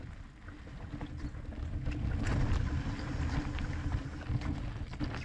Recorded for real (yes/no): yes